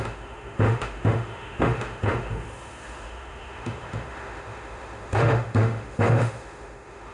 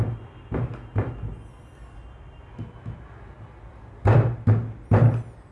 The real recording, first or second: second